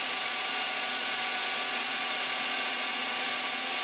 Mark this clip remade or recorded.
remade